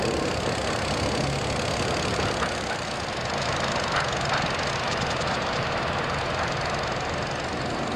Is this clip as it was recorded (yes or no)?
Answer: yes